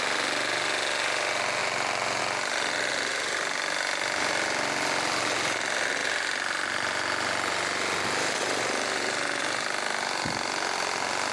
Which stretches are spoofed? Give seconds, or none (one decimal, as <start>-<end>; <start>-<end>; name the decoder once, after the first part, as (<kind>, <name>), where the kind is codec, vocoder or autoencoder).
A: 1.6-2.2 (vocoder, BigVGAN v2)